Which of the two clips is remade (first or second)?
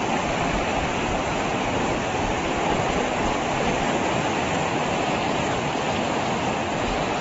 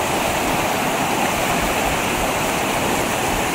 second